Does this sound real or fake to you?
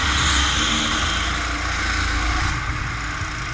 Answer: real